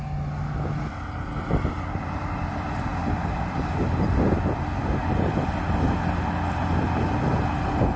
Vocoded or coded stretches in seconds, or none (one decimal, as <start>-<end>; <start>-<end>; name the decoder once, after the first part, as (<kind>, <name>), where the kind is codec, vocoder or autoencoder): none